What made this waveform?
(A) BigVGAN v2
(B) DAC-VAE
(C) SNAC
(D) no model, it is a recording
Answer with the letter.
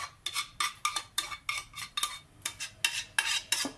D